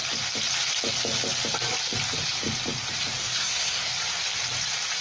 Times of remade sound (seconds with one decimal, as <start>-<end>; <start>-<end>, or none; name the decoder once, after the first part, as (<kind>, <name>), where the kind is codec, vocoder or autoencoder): 3.2-3.9 (codec, SNAC)

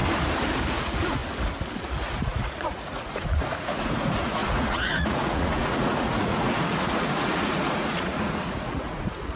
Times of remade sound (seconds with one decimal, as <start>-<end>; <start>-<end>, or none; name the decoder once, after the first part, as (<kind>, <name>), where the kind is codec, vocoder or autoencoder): 0.7-1.2 (vocoder, Vocos); 1.8-9.4

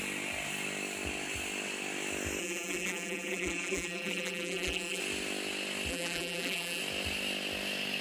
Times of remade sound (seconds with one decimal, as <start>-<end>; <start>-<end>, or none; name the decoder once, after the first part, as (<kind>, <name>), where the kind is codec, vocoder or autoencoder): 2.4-5.0 (vocoder, BigVGAN v2); 5.9-6.8

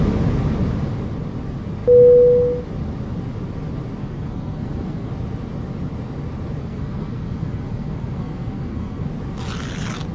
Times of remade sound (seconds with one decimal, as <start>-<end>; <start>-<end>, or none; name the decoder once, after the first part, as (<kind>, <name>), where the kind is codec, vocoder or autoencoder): 4.0-5.1 (codec, SNAC); 6.6-9.1